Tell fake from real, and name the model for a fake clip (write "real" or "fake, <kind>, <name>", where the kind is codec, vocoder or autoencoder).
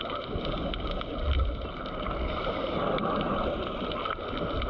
real